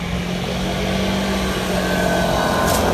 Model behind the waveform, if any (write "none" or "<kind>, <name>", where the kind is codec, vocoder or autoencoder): none